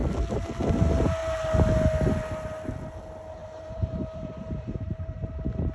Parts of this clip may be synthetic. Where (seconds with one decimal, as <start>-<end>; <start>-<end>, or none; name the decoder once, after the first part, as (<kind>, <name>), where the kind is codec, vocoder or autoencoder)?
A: 3.4-5.3 (vocoder, BigVGAN v2)